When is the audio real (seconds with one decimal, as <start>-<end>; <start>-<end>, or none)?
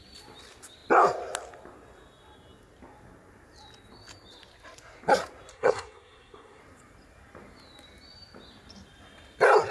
0.0-5.5; 6.6-9.7